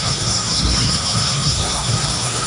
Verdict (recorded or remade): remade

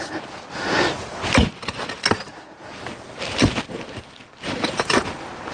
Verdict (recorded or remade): recorded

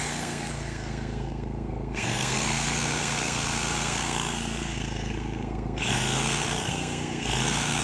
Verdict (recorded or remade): remade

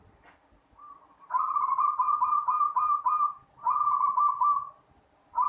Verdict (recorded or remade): recorded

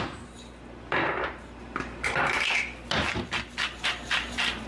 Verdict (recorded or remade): recorded